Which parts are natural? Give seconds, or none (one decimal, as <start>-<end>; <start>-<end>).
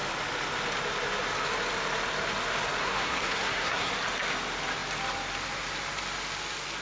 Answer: 0.0-2.8; 3.9-6.8